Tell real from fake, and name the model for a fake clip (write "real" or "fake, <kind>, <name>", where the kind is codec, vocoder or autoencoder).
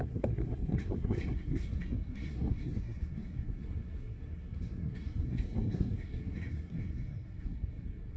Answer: fake, codec, SNAC